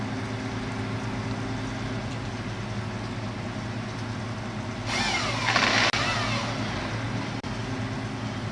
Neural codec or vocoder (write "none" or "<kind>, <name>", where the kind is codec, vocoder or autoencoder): none